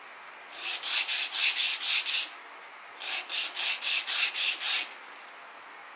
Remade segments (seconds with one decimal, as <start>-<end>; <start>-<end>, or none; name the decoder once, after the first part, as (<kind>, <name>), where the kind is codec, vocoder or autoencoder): none